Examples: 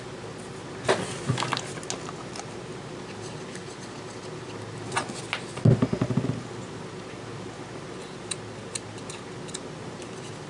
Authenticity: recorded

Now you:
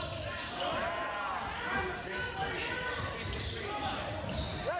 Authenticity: recorded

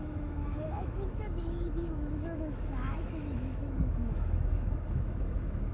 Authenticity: remade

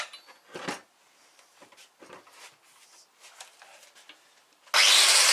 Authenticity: recorded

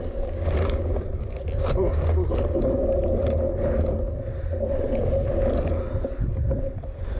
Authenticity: recorded